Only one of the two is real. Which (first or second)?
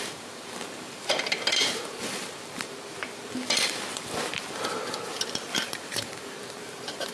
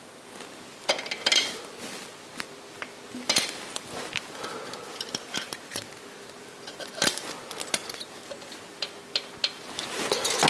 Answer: second